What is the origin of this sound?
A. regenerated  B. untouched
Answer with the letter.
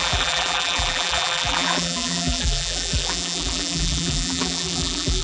A